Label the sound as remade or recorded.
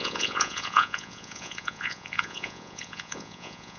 remade